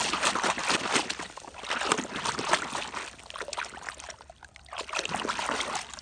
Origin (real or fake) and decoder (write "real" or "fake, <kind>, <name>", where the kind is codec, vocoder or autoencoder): real